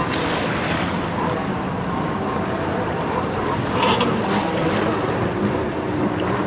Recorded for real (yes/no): yes